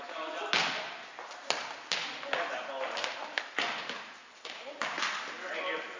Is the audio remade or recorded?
recorded